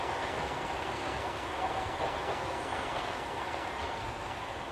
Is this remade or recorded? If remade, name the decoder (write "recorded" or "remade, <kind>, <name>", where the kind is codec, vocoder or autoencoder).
remade, codec, SNAC